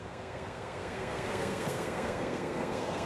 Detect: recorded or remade remade